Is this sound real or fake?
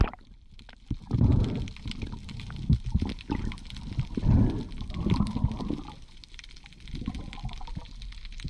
real